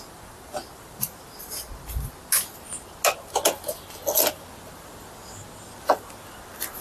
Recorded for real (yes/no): yes